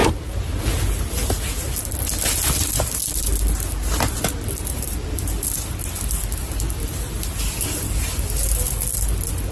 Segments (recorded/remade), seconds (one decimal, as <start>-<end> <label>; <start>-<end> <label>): 0.0-9.5 recorded